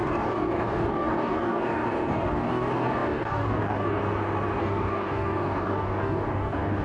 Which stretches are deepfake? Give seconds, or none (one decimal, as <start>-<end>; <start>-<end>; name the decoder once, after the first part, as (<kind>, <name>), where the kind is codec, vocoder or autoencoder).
0.0-4.0 (codec, DAC); 4.6-6.8

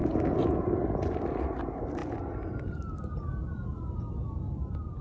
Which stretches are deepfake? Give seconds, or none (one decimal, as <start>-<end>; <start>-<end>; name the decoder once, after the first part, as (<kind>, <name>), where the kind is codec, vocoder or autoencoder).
none

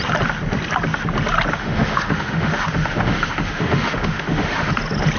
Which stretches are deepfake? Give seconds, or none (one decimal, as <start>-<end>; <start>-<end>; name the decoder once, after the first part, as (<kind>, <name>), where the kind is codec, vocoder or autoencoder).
1.6-4.7 (autoencoder, DAC-VAE)

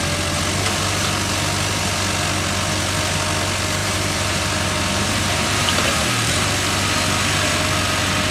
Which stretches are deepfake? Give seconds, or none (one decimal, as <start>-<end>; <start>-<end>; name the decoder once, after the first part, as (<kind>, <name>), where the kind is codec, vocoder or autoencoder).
3.8-6.5 (vocoder, BigVGAN v2)